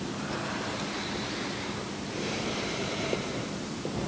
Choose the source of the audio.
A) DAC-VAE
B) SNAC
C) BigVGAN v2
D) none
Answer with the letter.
C